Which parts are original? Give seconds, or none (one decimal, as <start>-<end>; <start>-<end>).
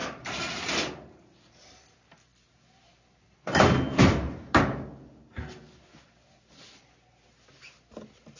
0.7-8.4